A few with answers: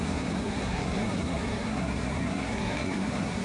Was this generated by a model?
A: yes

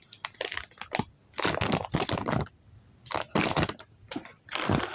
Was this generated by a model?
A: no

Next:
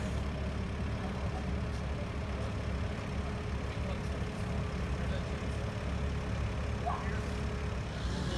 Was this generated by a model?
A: no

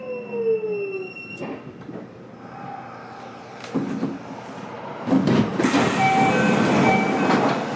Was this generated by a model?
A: no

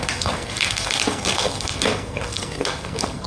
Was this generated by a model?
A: yes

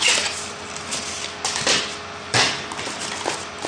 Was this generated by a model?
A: no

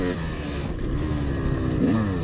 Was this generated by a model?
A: no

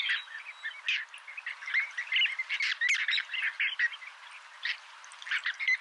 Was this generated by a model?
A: no